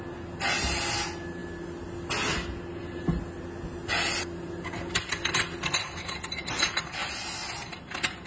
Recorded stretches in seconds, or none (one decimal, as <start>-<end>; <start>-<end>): 0.0-8.3